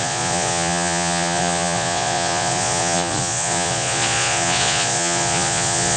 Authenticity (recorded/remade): remade